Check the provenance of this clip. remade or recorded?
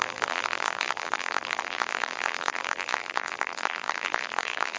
remade